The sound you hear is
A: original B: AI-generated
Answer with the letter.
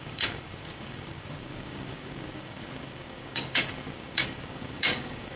B